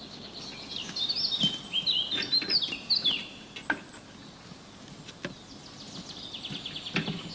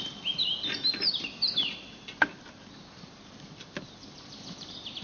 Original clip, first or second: first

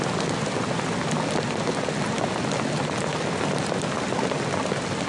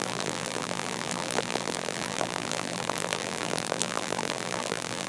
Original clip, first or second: first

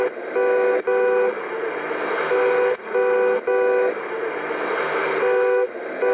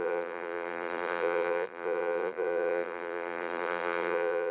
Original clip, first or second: first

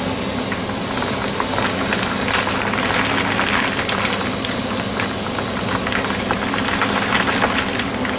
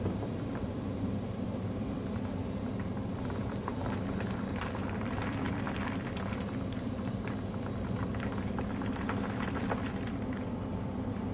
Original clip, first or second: first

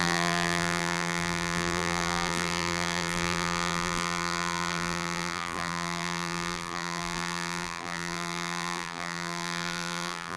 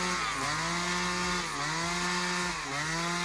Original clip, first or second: second